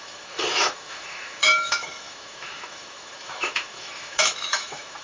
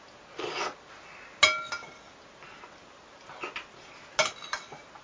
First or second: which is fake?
first